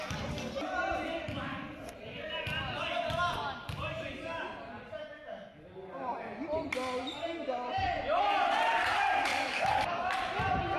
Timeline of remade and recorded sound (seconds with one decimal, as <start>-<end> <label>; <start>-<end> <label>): 0.0-9.3 recorded; 9.3-10.1 remade; 10.1-10.8 recorded